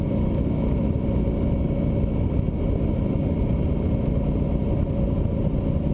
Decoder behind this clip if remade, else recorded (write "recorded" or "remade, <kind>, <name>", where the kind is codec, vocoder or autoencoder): recorded